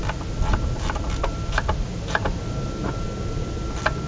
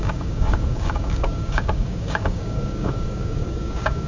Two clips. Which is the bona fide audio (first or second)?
first